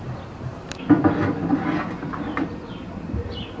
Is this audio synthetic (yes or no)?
yes